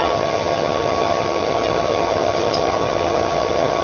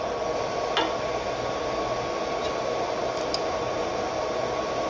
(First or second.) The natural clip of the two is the second